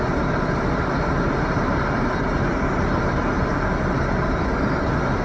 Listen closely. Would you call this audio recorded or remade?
remade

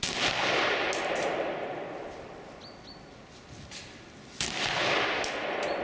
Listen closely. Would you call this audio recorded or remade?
recorded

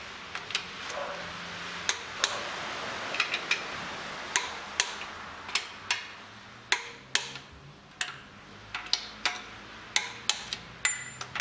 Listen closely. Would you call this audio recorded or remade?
recorded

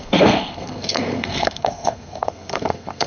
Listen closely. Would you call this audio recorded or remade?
remade